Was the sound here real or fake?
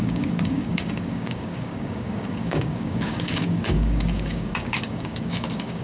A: fake